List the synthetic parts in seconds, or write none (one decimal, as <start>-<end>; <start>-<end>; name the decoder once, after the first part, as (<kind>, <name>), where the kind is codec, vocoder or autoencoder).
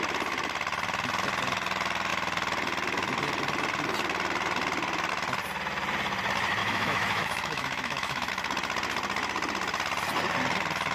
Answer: 6.6-8.3 (autoencoder, DAC-VAE)